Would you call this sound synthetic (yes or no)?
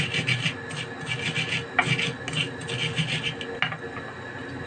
no